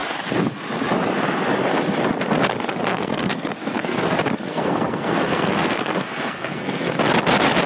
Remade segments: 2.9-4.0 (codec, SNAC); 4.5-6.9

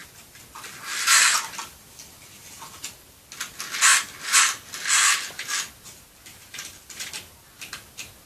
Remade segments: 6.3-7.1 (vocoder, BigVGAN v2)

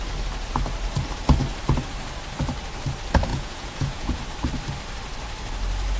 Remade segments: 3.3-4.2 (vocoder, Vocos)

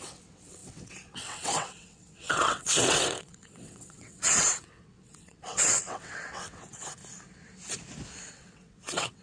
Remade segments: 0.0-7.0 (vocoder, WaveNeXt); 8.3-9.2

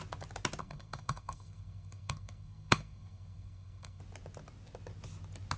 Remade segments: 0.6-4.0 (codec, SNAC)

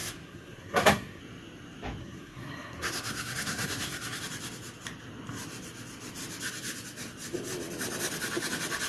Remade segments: 0.0-1.2 (codec, SNAC); 2.0-4.2